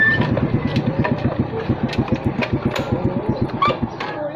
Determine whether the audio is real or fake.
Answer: real